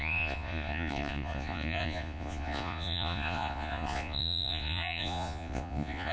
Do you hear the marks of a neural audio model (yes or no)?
yes